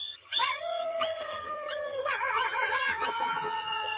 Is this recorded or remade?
remade